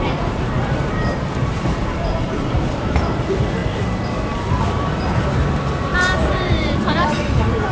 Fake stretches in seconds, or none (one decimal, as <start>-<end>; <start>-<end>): 0.0-7.7